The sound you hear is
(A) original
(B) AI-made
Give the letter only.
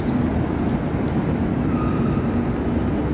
A